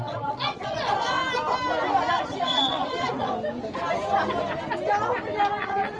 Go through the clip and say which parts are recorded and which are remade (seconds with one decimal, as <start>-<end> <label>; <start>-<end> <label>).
0.0-1.2 remade; 1.2-2.1 recorded; 2.1-3.3 remade; 3.3-5.6 recorded; 5.6-6.0 remade